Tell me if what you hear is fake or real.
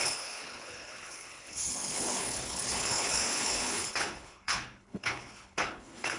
fake